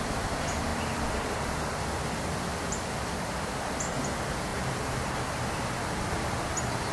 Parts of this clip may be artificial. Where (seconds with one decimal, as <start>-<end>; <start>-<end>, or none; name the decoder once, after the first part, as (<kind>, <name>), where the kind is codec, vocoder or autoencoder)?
0.7-1.8 (vocoder, BigVGAN v2); 4.5-5.3